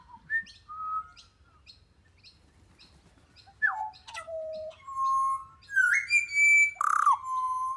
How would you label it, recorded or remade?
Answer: recorded